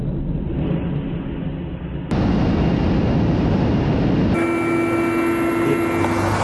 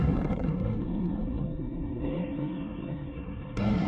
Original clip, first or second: first